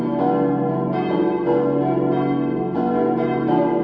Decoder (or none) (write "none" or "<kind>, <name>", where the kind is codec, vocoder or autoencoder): none